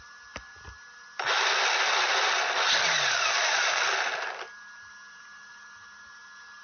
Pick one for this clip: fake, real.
real